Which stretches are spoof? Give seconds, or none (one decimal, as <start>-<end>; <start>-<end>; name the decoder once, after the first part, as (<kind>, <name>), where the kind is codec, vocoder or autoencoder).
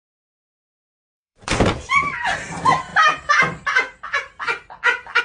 0.0-1.5 (vocoder, BigVGAN v2); 2.3-2.9